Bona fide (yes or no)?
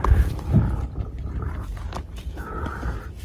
yes